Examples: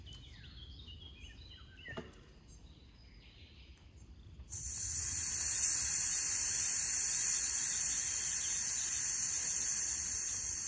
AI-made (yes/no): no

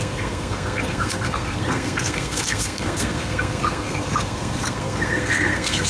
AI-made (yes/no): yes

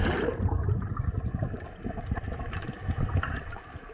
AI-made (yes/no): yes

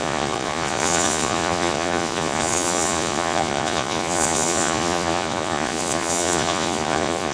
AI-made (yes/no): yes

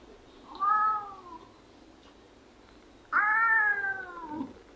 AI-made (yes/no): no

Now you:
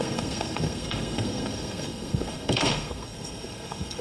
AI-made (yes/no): yes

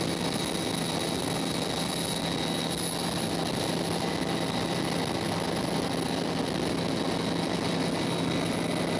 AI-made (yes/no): no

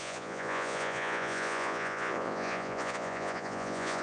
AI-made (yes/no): yes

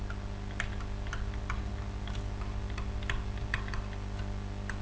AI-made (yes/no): no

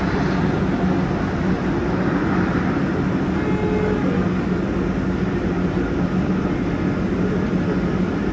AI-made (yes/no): no